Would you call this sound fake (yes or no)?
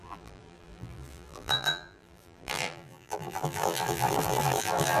yes